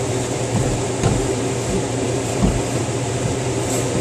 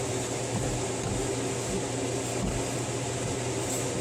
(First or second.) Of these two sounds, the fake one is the first